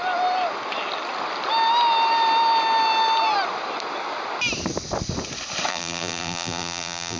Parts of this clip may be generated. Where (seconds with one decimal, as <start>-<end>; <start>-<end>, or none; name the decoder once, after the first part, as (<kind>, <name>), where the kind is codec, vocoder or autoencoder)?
5.7-7.2 (vocoder, BigVGAN v2)